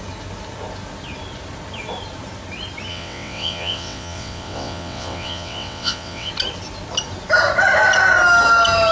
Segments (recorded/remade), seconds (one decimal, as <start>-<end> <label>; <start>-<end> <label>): 0.0-2.9 recorded; 2.9-6.3 remade; 6.3-8.9 recorded